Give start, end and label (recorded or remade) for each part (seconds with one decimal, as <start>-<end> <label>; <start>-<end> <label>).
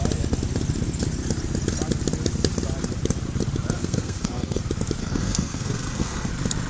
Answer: 0.0-3.8 recorded; 3.8-4.6 remade; 4.6-5.0 recorded; 5.0-6.3 remade; 6.3-6.7 recorded